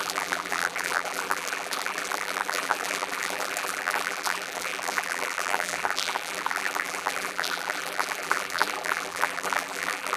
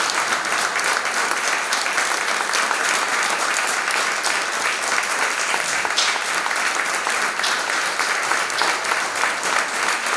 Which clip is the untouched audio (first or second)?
second